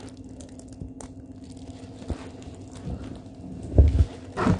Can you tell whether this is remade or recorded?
recorded